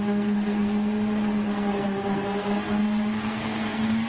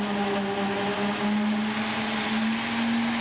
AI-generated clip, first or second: first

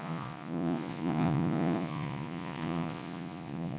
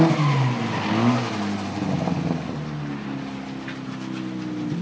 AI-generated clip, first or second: first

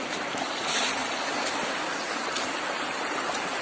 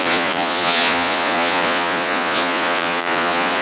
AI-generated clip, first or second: second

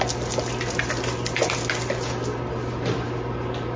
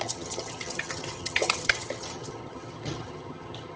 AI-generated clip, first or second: second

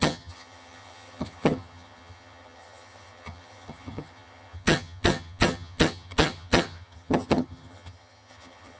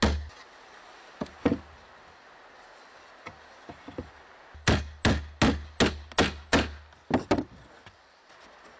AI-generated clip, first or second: first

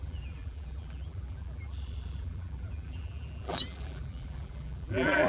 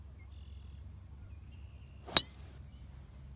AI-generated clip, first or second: first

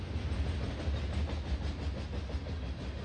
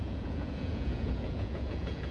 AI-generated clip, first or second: second